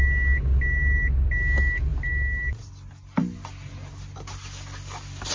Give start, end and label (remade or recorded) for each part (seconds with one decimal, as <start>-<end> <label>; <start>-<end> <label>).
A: 0.0-5.3 recorded